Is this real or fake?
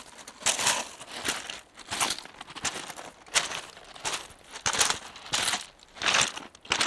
real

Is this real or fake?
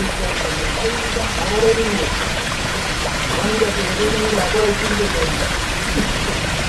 fake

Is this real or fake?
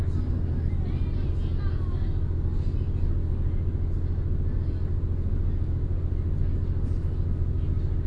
real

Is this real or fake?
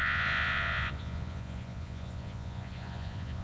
fake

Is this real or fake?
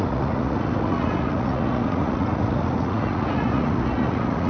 fake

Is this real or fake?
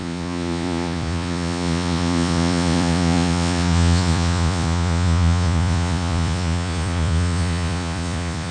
fake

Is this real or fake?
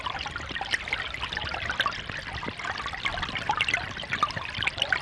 real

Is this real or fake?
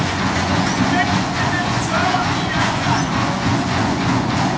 fake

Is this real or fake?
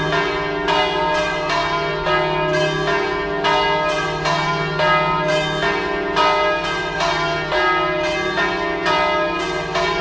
real